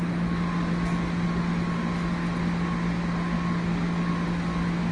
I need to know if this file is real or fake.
real